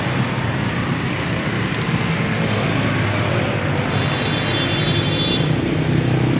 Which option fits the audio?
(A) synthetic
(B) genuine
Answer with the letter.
B